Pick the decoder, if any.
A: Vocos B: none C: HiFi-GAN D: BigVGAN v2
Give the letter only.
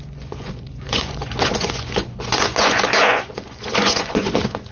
A